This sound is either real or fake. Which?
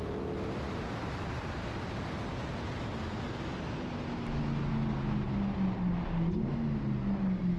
real